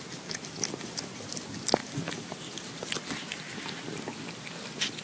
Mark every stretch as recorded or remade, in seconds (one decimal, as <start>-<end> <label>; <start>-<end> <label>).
0.0-5.0 recorded